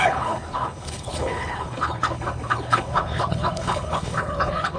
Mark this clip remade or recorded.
remade